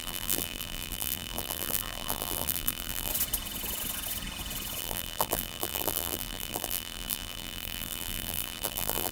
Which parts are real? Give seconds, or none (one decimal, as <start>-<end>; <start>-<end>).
3.1-4.8